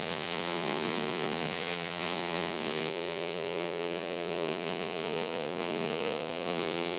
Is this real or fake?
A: fake